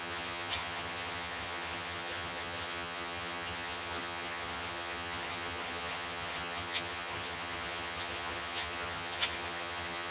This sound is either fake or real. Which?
fake